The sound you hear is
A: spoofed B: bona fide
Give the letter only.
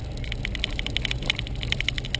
B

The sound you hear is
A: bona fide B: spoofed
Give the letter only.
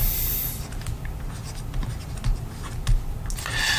A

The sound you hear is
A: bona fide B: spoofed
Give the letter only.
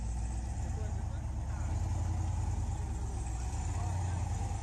A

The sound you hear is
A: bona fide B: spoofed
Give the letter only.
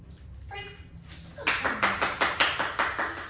A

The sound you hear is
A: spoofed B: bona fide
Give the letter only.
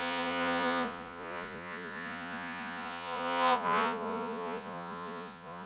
A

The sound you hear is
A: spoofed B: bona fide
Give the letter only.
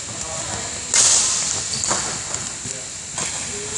A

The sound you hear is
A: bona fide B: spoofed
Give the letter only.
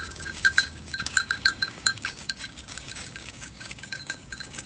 B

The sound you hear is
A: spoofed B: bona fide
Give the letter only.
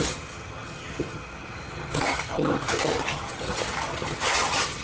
A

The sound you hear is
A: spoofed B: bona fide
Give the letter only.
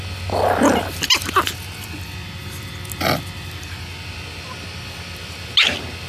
B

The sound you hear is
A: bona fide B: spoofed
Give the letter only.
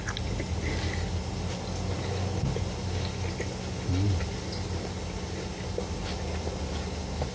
A